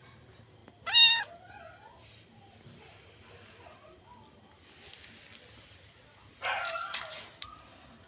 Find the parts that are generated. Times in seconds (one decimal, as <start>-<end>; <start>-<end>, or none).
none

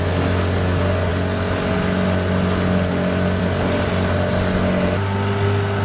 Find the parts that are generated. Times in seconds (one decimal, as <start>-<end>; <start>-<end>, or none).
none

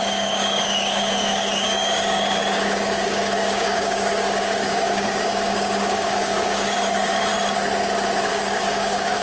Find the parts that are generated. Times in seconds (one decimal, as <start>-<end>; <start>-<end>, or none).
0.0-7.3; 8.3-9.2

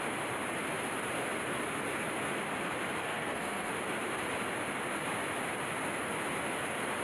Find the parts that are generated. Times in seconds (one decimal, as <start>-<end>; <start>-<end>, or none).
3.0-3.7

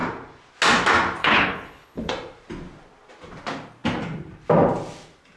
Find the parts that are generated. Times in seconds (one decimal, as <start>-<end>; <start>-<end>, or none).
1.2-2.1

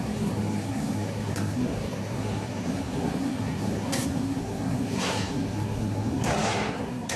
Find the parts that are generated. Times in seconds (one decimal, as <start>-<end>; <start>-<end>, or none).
0.0-7.2